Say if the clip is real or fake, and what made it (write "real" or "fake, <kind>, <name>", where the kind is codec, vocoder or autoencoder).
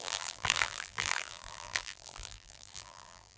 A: fake, vocoder, BigVGAN v2